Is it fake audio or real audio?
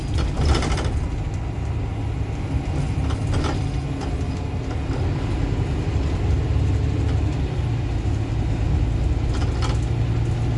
real